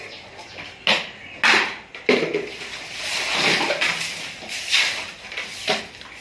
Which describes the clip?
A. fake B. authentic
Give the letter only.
B